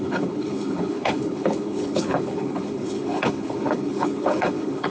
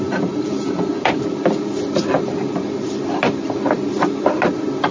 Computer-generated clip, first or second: first